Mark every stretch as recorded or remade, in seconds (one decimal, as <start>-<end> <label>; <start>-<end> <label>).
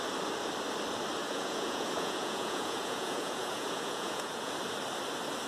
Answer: 0.0-1.2 recorded; 1.2-4.5 remade; 4.5-5.5 recorded